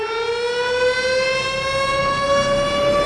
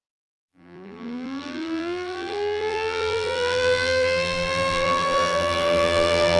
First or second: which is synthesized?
second